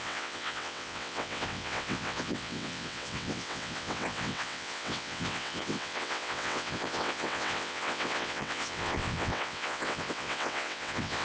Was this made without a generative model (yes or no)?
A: no